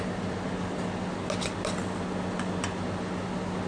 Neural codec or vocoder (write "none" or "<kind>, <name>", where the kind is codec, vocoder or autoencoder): none